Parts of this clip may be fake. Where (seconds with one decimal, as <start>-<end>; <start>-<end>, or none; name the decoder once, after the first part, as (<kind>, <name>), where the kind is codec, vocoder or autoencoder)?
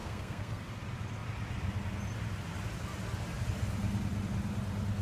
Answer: 0.0-0.6 (codec, SNAC)